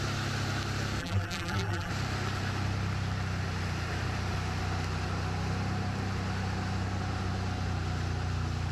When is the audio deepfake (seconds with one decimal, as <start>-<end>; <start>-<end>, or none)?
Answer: 1.0-1.9